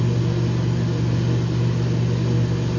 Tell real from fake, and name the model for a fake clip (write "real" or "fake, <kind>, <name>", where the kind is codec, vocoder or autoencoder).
real